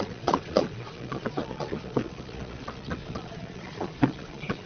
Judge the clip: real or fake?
fake